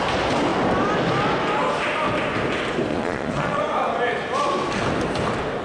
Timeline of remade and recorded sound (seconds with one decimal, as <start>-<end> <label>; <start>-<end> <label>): 0.0-2.9 recorded; 2.9-3.6 remade; 3.6-5.6 recorded